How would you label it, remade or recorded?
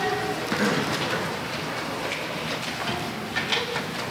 recorded